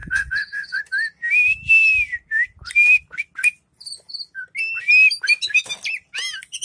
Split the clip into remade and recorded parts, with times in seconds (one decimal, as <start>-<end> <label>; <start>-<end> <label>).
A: 0.0-0.8 remade; 0.8-6.6 recorded